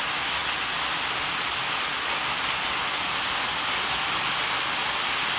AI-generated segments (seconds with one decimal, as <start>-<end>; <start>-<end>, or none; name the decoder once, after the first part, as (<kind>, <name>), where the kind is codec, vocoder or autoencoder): none